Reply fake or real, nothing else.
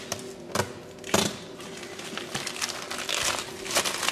real